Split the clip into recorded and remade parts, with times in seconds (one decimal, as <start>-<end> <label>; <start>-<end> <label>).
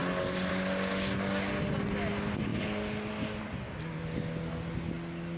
0.0-5.4 recorded